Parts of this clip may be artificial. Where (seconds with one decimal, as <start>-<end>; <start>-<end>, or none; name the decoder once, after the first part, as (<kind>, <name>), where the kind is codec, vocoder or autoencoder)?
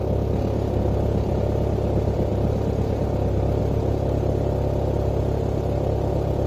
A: none